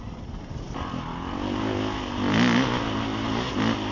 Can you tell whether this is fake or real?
real